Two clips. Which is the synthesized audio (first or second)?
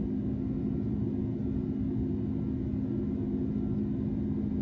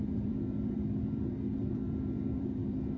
second